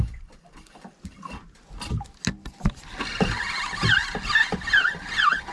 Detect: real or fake real